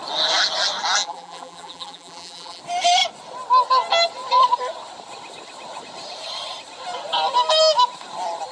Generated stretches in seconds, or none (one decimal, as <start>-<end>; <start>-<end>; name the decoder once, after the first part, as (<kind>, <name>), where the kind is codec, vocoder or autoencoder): 1.0-2.6 (vocoder, BigVGAN v2)